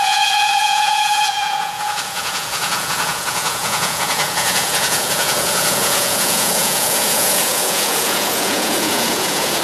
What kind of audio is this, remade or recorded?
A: remade